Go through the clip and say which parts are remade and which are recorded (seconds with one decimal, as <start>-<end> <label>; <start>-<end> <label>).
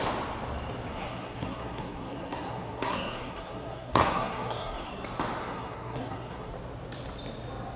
0.0-0.9 recorded; 0.9-4.9 remade; 4.9-5.4 recorded; 5.4-6.5 remade; 6.5-7.8 recorded